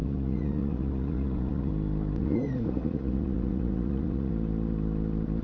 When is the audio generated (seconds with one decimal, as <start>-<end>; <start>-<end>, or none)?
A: 0.0-1.7; 2.2-4.3